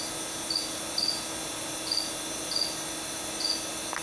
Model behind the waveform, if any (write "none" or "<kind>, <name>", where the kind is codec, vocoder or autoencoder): none